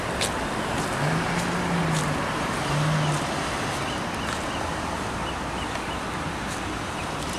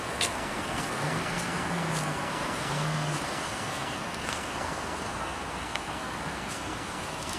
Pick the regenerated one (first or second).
second